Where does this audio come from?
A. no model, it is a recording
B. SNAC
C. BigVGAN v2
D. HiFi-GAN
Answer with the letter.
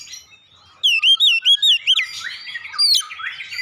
A